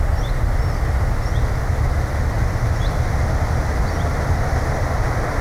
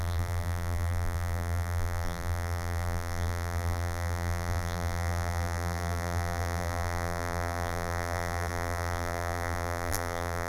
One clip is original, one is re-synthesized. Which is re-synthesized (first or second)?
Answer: second